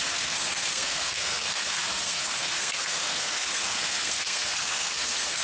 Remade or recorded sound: remade